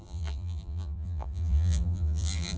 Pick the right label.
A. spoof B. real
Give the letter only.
A